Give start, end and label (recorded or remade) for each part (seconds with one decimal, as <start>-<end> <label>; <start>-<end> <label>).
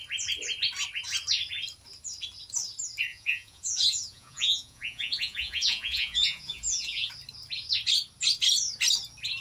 0.0-3.1 recorded; 3.1-7.1 remade; 7.1-9.4 recorded